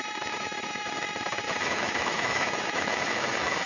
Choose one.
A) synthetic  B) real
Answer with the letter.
A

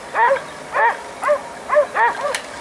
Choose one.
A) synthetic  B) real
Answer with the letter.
B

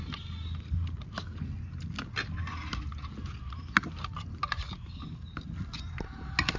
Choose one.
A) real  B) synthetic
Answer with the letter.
A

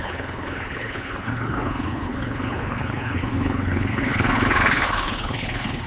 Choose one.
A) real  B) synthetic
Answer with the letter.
B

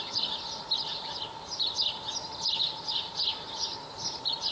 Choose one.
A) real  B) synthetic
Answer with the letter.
A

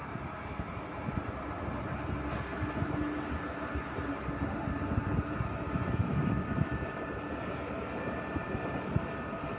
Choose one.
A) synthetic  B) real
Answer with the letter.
B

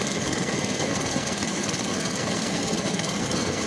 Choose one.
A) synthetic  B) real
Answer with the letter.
A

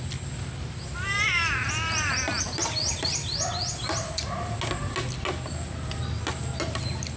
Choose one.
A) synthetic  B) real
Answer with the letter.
B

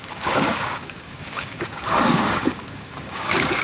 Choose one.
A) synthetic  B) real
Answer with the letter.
A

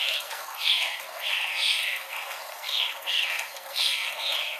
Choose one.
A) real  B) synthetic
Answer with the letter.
B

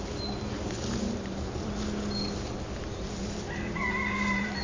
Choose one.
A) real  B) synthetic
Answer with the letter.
A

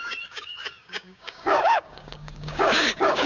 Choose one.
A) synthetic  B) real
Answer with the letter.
A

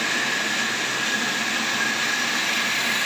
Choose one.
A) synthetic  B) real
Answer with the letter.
B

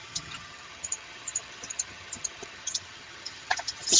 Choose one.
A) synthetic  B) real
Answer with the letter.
A